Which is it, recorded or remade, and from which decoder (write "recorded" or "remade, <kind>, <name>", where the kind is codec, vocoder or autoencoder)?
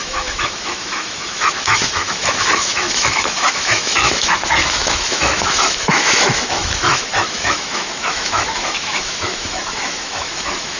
remade, autoencoder, DAC-VAE